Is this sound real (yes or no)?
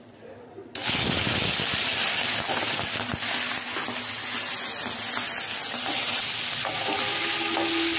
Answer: yes